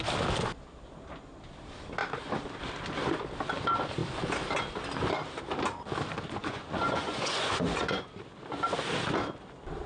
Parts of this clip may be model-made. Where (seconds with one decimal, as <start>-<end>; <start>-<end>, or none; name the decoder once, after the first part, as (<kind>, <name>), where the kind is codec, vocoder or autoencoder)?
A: 6.4-8.1 (vocoder, Vocos)